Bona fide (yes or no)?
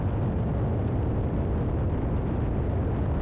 yes